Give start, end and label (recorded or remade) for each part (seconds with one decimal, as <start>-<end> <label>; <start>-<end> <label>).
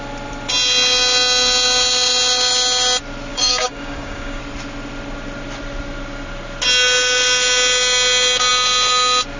0.0-3.3 recorded; 3.3-4.4 remade; 4.4-9.4 recorded